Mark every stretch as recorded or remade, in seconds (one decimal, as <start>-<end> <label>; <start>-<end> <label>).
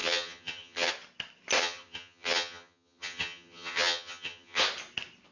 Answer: 0.0-0.9 remade; 0.9-1.6 recorded; 1.6-4.6 remade; 4.6-5.3 recorded